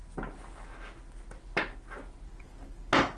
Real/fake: real